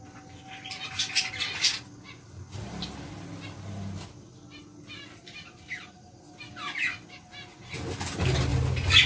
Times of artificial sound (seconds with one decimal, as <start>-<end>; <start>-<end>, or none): none